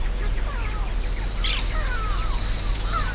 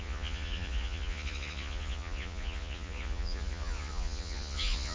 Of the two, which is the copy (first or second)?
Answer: second